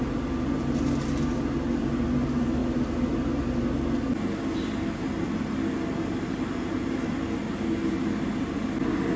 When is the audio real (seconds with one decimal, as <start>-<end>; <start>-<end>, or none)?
0.0-9.2